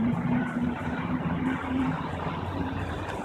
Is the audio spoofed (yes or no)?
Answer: yes